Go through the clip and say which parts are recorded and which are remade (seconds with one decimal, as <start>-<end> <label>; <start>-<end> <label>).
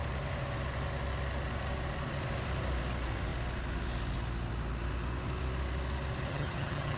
0.0-6.3 recorded; 6.3-7.0 remade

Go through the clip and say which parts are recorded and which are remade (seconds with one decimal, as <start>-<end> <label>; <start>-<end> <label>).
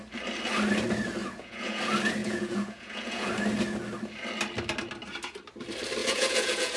0.0-1.2 recorded; 1.2-1.8 remade; 1.8-2.2 recorded; 2.2-3.3 remade; 3.3-6.0 recorded; 6.0-6.8 remade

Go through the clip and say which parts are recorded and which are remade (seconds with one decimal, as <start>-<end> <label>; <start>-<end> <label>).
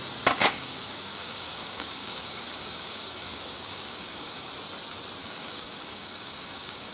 0.0-0.4 recorded; 0.4-4.5 remade; 4.5-5.2 recorded; 5.2-6.9 remade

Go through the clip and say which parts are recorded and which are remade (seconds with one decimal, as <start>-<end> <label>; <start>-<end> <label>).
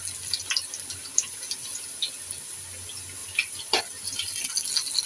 0.0-3.2 recorded; 3.2-3.8 remade; 3.8-5.1 recorded